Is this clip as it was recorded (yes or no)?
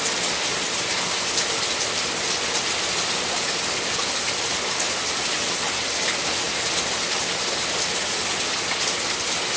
yes